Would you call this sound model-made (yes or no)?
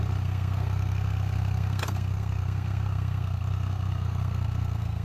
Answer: yes